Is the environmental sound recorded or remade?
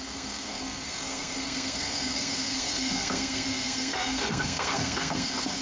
remade